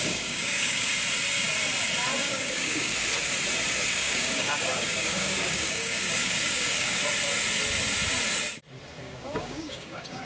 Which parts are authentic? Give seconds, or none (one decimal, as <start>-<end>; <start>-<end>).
0.9-2.2; 2.9-3.9; 7.0-9.0

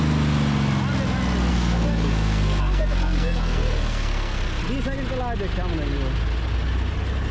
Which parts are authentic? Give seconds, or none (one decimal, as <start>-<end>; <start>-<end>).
0.0-1.5; 4.6-7.3

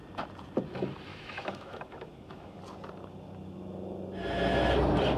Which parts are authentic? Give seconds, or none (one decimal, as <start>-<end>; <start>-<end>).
0.0-1.1; 2.6-5.2